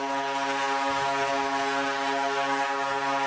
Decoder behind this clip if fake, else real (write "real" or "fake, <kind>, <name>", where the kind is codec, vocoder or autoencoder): real